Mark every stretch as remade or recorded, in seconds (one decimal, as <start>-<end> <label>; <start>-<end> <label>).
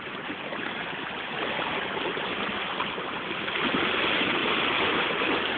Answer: 0.0-5.6 recorded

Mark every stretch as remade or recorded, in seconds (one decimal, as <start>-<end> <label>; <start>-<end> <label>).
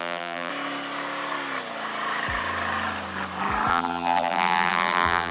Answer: 0.0-0.5 remade; 0.5-3.7 recorded; 3.7-5.3 remade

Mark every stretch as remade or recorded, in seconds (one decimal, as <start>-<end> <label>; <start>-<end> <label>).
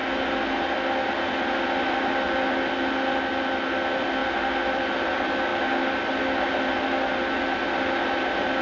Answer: 0.0-8.6 recorded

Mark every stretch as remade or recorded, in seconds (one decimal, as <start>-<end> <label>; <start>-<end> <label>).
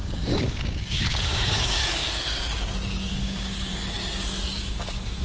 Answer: 0.0-1.8 remade; 1.8-3.1 recorded; 3.1-3.7 remade; 3.7-4.6 recorded; 4.6-5.2 remade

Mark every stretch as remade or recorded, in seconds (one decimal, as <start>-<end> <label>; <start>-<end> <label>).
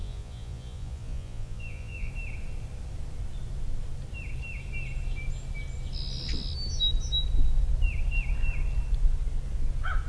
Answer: 0.0-2.1 remade; 2.1-10.1 recorded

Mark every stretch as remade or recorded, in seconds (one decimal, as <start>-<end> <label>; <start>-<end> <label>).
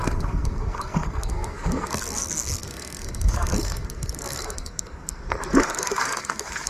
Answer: 0.0-6.7 remade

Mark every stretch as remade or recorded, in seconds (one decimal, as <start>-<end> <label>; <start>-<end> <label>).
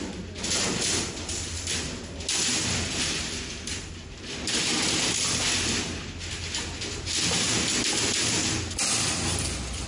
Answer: 0.0-2.4 recorded; 2.4-4.8 remade; 4.8-9.9 recorded